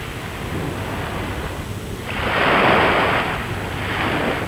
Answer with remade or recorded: recorded